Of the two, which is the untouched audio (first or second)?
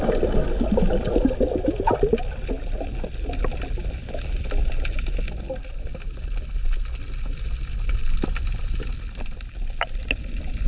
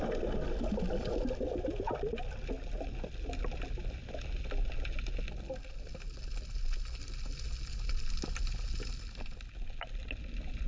second